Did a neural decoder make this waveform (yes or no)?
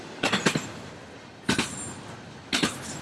no